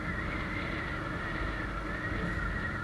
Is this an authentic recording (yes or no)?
yes